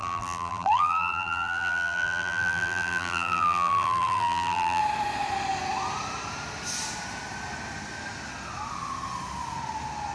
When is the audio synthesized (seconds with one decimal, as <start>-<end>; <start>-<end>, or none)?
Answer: 0.0-4.8